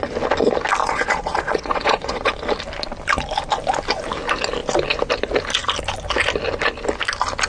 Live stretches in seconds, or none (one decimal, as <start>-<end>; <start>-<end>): 0.0-0.8; 2.3-7.5